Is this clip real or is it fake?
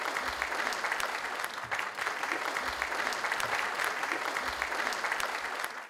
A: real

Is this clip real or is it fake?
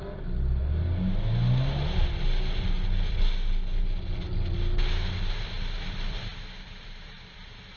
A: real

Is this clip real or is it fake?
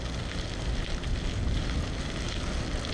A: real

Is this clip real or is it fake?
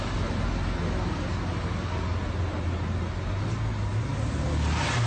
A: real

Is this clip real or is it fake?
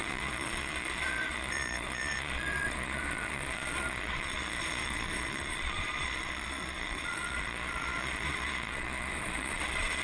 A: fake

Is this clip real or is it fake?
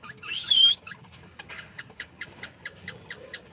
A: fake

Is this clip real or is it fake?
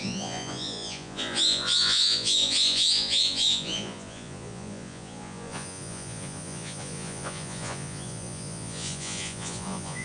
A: fake